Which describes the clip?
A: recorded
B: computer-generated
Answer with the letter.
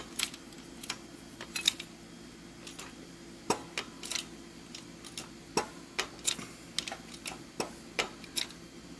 A